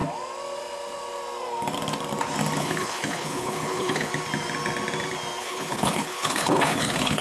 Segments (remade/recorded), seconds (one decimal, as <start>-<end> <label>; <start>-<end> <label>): 0.0-2.6 recorded; 2.6-4.1 remade; 4.1-5.4 recorded; 5.4-7.2 remade

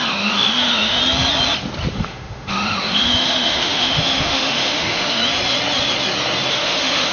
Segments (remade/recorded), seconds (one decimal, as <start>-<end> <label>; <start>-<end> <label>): 0.0-1.0 remade; 1.0-1.9 recorded; 1.9-5.2 remade; 5.2-6.5 recorded; 6.5-7.1 remade

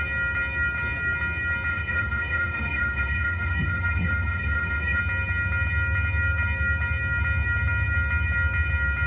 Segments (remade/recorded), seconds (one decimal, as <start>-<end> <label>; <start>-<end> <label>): 0.0-1.7 recorded; 1.7-5.0 remade; 5.0-9.1 recorded

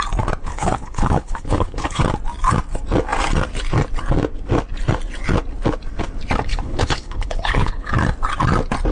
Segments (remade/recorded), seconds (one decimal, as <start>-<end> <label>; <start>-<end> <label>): 0.0-0.4 recorded; 0.4-2.0 remade; 2.0-6.5 recorded; 6.5-7.9 remade; 7.9-8.9 recorded

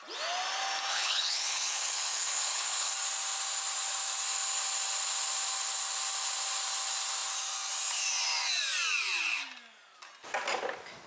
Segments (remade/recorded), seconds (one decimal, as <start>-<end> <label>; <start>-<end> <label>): 0.0-0.9 recorded; 0.9-2.9 remade; 2.9-11.1 recorded

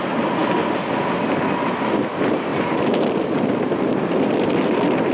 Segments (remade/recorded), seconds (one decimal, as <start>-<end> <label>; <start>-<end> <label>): 0.0-5.1 recorded